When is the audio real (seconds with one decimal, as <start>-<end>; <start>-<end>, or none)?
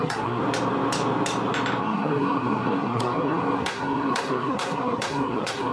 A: 0.4-1.8